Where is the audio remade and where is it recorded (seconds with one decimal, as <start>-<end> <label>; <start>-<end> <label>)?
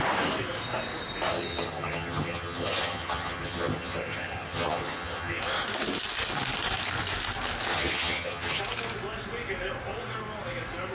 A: 0.0-1.3 recorded; 1.3-5.4 remade; 5.4-7.7 recorded; 7.7-8.6 remade; 8.6-10.9 recorded